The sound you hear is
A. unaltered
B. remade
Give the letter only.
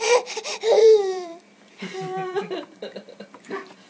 B